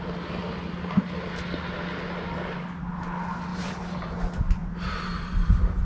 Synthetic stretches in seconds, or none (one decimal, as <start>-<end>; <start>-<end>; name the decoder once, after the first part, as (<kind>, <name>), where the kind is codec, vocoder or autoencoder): 3.5-4.1 (vocoder, BigVGAN v2); 4.6-5.8